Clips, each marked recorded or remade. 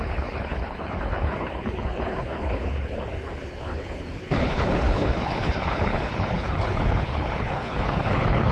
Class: remade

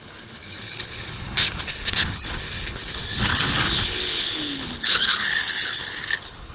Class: remade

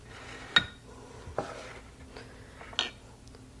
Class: recorded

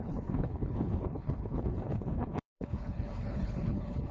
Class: remade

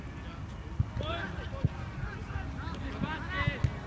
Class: recorded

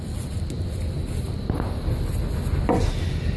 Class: recorded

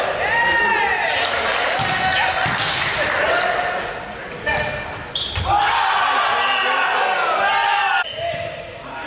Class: recorded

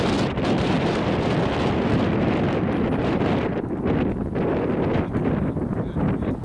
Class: recorded